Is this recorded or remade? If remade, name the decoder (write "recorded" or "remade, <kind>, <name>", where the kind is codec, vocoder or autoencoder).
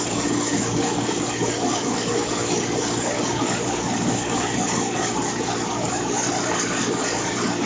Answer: remade, codec, DAC